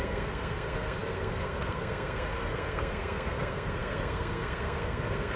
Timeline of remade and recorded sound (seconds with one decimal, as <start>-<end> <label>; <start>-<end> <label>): 0.0-5.4 remade